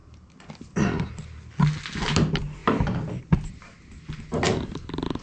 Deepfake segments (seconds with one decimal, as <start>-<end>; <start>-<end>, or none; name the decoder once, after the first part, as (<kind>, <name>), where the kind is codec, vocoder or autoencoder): none

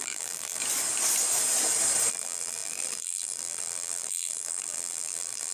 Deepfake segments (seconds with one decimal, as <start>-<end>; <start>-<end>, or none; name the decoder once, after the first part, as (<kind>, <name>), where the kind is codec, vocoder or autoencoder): 0.0-0.6 (vocoder, BigVGAN v2); 2.1-5.5

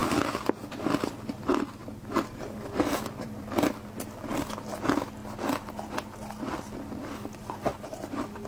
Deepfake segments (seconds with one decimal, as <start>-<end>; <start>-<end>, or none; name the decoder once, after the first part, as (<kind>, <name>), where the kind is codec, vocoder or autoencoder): 1.8-4.7 (vocoder, BigVGAN v2); 7.7-8.5

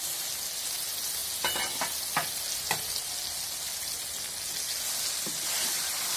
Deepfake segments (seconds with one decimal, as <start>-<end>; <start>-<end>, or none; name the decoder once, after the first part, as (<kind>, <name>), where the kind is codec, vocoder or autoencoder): none

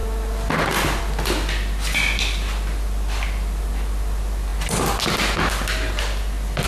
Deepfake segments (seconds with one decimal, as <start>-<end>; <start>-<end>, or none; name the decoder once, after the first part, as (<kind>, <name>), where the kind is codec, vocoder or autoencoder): none

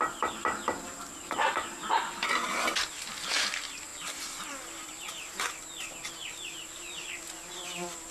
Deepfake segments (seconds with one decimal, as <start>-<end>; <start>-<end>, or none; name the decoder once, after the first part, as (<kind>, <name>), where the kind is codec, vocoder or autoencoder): none

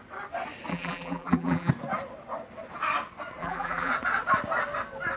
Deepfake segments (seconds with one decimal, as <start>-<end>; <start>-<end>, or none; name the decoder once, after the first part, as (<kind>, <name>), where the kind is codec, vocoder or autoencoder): 0.7-1.7 (vocoder, BigVGAN v2); 3.4-3.9